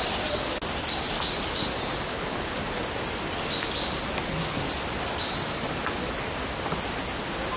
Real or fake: real